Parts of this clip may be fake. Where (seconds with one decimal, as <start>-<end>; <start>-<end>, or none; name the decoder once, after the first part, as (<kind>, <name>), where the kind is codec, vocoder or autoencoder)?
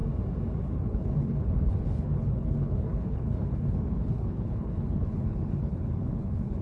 0.6-6.6 (codec, HILCodec)